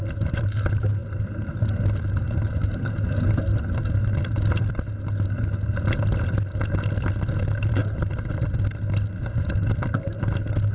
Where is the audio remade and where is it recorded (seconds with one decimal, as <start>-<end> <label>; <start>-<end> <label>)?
0.0-10.7 recorded